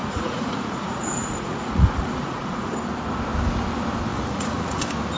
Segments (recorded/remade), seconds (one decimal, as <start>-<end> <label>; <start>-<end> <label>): 0.0-2.7 remade; 2.7-4.1 recorded; 4.1-4.8 remade; 4.8-5.2 recorded